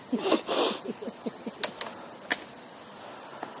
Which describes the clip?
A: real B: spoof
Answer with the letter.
A